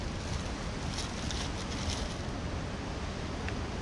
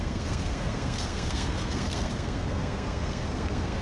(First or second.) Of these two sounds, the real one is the first